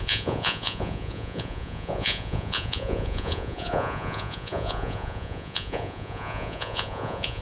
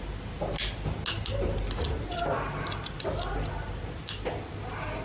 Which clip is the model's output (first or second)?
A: first